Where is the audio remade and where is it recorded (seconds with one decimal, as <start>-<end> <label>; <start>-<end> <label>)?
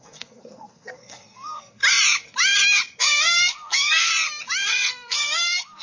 0.0-1.8 remade; 1.8-3.0 recorded; 3.0-4.1 remade; 4.1-4.7 recorded; 4.7-5.8 remade